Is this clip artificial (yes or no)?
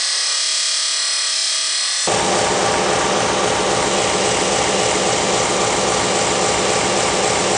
no